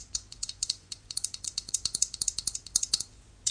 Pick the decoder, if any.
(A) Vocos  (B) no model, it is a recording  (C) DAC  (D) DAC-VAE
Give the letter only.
A